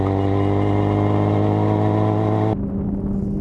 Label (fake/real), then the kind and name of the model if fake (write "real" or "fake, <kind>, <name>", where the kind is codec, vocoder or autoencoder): real